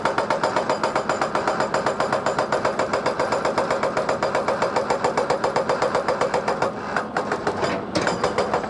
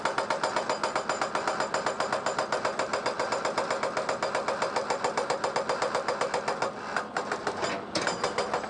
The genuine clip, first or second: second